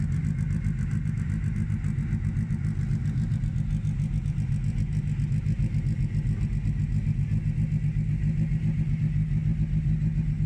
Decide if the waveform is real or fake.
real